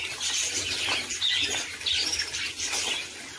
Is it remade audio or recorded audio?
recorded